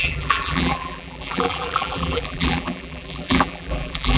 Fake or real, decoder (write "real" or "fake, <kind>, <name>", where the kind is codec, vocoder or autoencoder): fake, vocoder, BigVGAN v2